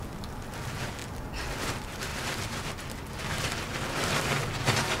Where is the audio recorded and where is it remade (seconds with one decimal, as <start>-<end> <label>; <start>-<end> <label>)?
0.0-5.0 recorded